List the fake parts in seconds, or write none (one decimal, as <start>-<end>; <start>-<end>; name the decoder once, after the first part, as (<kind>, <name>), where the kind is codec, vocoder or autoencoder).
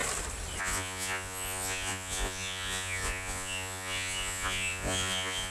0.6-5.5 (vocoder, Vocos)